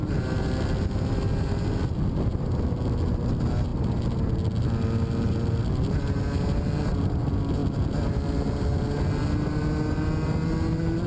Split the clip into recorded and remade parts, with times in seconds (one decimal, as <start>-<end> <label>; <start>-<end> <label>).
0.0-11.1 recorded